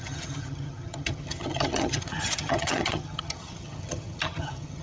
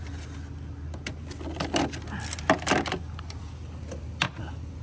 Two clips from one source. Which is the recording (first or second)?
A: second